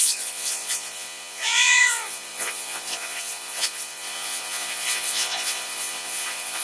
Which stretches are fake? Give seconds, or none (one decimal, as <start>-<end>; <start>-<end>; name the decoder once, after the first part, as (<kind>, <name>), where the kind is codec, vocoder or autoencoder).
0.0-6.6 (vocoder, Vocos)